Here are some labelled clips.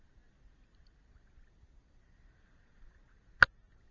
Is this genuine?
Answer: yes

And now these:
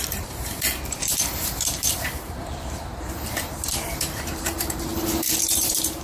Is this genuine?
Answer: no